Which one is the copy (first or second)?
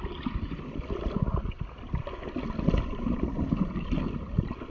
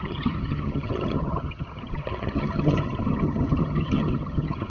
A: second